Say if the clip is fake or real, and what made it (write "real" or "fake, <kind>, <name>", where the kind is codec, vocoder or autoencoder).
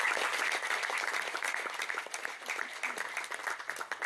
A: real